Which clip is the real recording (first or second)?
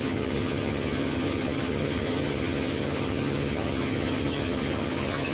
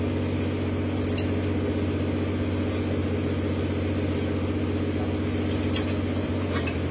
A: second